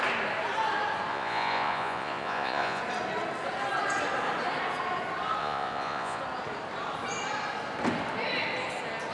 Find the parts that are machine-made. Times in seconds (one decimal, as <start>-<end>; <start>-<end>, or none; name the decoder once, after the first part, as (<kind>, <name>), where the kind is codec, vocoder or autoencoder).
1.1-2.8 (vocoder, Vocos); 5.4-6.2